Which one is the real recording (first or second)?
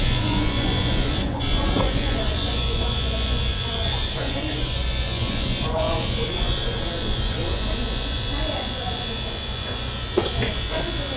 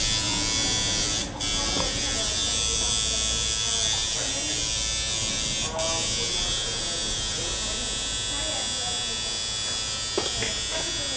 second